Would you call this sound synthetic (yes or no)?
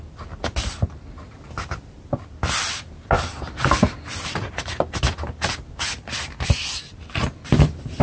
no